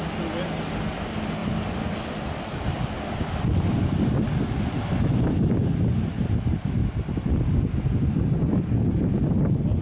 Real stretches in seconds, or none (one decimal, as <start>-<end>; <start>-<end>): 0.0-9.8